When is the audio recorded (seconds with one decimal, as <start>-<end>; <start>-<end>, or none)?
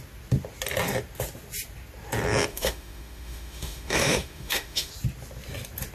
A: 0.0-2.5; 4.9-5.9